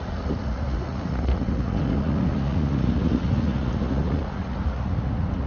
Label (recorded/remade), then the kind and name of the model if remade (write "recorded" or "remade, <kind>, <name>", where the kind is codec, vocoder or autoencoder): remade, vocoder, Vocos